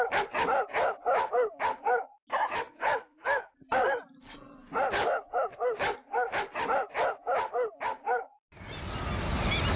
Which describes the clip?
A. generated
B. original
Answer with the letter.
B